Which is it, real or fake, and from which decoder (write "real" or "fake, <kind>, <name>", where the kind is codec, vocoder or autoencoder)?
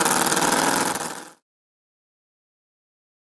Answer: fake, vocoder, BigVGAN v2